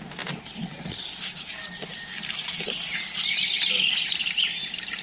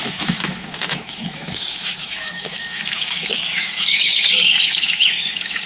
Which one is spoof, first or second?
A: second